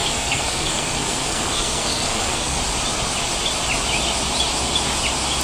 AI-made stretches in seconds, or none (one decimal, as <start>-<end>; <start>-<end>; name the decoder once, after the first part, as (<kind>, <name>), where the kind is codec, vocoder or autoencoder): 0.0-2.6 (codec, SNAC)